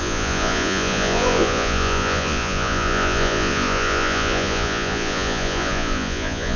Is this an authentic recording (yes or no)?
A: no